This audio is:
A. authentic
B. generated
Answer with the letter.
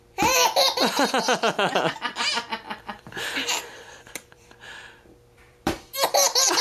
B